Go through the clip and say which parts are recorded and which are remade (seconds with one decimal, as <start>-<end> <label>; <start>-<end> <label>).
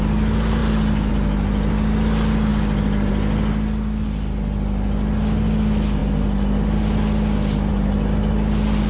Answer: 0.0-8.9 recorded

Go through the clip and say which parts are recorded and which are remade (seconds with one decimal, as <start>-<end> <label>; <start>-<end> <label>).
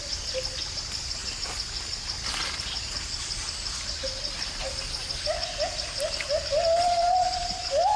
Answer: 0.0-8.0 recorded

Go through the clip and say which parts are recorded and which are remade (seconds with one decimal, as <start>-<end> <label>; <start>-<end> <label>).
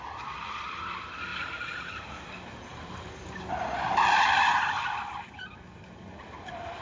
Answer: 0.0-1.3 recorded; 1.3-2.0 remade; 2.0-2.7 recorded; 2.7-3.4 remade; 3.4-6.8 recorded